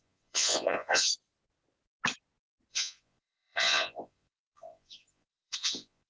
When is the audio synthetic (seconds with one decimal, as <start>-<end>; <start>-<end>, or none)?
0.0-1.1; 2.7-6.1